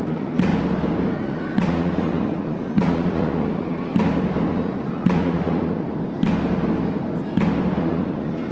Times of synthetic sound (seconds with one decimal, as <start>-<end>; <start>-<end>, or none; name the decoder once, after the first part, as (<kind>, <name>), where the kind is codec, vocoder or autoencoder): 0.0-0.5 (vocoder, Vocos); 1.1-3.9; 4.5-5.9; 7.8-8.5